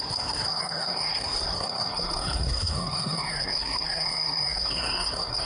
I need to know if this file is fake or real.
fake